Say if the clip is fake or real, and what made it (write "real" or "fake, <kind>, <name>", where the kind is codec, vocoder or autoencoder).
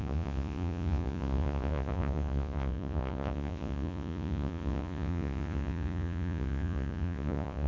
fake, vocoder, Vocos